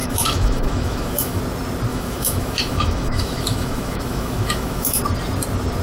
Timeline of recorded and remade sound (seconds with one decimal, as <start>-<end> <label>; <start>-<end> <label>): 0.0-1.4 remade; 1.4-1.9 recorded; 1.9-5.0 remade; 5.0-5.8 recorded